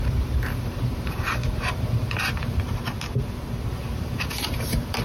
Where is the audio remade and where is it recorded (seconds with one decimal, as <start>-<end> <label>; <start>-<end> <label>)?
0.0-2.8 remade; 2.8-3.7 recorded; 3.7-5.0 remade

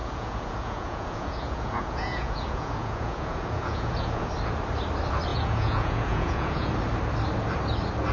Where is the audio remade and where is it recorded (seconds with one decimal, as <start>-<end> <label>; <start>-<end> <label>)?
0.0-4.3 remade; 4.3-5.3 recorded; 5.3-6.7 remade; 6.7-8.1 recorded

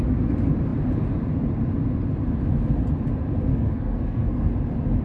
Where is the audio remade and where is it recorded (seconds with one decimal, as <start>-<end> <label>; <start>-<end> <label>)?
0.0-3.5 recorded; 3.5-4.5 remade; 4.5-5.0 recorded

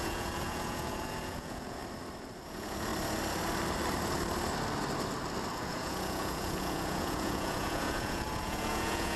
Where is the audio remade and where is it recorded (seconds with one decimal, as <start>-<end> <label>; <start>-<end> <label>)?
0.0-1.8 remade; 1.8-2.4 recorded; 2.4-2.9 remade; 2.9-5.5 recorded; 5.5-9.2 remade

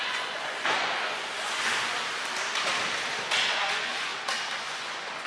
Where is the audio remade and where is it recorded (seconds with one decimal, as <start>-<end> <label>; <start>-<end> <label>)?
0.0-2.0 remade; 2.0-3.5 recorded; 3.5-4.1 remade; 4.1-4.6 recorded; 4.6-5.3 remade

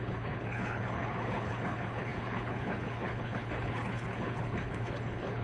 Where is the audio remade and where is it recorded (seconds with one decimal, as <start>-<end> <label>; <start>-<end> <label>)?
0.0-5.4 remade

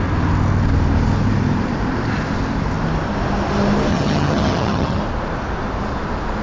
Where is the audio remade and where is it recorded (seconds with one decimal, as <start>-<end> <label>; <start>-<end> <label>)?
0.0-3.9 recorded; 3.9-5.0 remade; 5.0-6.4 recorded